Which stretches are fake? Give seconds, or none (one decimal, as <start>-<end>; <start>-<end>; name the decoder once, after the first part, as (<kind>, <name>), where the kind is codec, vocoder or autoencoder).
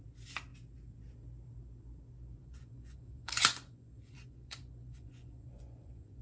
2.4-6.2 (vocoder, Vocos)